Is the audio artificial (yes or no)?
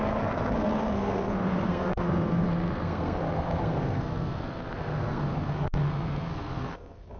yes